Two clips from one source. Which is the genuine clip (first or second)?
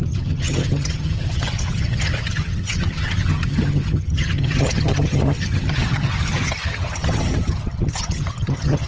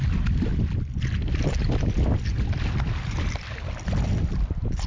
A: second